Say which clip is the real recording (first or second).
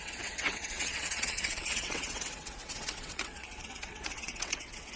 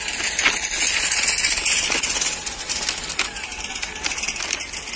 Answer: second